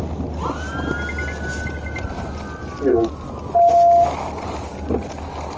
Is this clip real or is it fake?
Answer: real